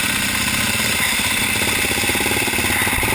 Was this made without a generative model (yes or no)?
yes